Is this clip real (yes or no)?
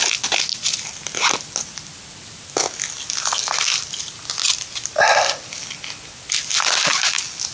yes